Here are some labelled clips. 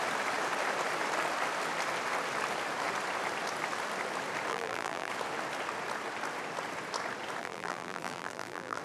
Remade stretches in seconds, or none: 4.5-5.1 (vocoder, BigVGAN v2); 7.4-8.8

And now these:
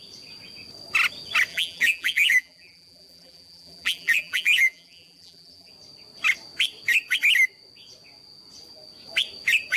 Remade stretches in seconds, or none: 1.5-5.7 (vocoder, BigVGAN v2)

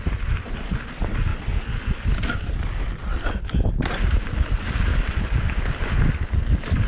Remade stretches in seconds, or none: 0.0-1.3 (vocoder, BigVGAN v2); 3.3-6.9

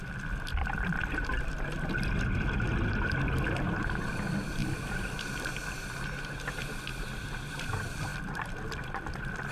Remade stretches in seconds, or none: 4.6-5.2 (vocoder, BigVGAN v2); 8.1-9.5